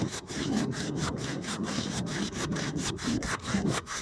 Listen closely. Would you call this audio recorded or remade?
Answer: remade